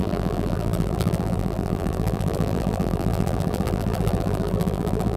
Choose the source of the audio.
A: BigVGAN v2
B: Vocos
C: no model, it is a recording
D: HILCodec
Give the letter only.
A